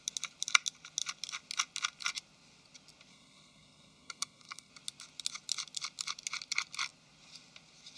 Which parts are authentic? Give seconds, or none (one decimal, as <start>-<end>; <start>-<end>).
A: 0.0-3.1; 4.7-8.0